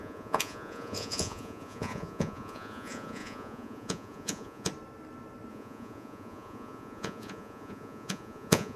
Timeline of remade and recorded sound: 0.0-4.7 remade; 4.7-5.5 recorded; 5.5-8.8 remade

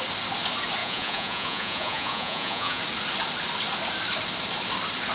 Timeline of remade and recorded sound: 0.0-0.8 recorded; 0.8-2.8 remade; 2.8-5.1 recorded

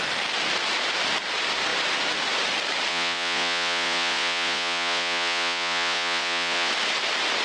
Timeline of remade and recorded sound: 0.0-2.9 recorded; 2.9-6.7 remade; 6.7-7.4 recorded

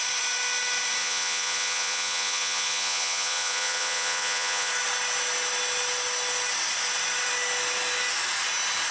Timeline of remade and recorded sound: 0.0-1.0 recorded; 1.0-4.7 remade; 4.7-8.9 recorded

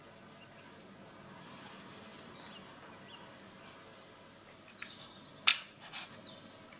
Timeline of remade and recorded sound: 0.0-5.5 recorded; 5.5-6.1 remade; 6.1-6.8 recorded